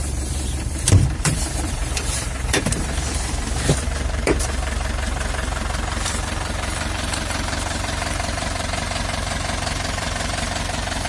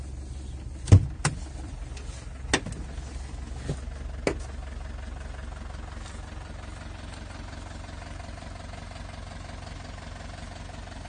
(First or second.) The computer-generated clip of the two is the first